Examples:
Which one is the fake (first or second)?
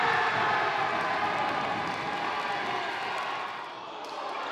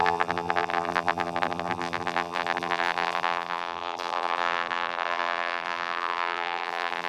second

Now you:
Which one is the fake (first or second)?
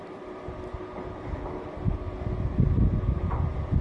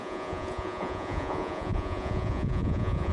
second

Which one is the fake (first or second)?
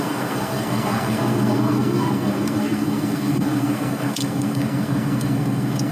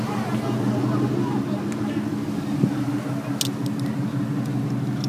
first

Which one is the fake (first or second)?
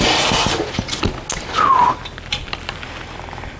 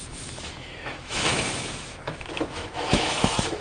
second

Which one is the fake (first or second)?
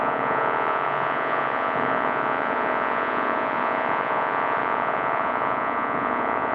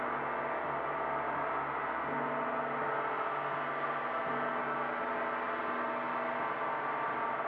first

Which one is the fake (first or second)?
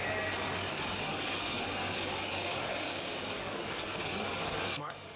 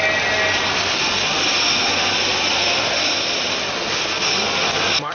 first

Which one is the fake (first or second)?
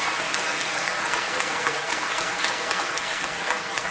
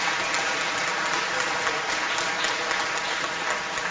first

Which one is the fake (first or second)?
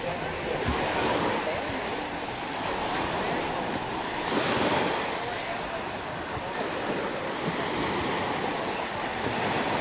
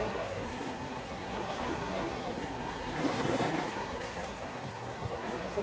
second